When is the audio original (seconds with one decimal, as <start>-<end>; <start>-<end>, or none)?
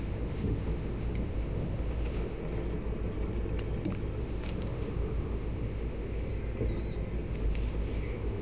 2.4-4.2; 6.3-7.3